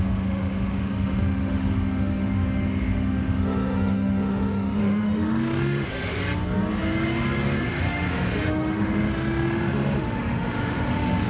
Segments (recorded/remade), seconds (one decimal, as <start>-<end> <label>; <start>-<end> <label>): 0.0-6.2 remade; 6.2-7.7 recorded; 7.7-11.3 remade